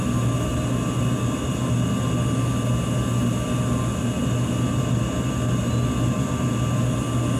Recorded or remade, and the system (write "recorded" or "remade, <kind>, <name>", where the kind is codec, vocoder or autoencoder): recorded